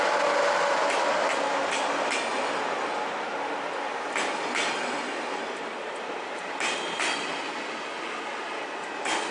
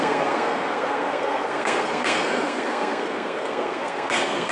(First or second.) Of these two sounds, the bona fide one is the first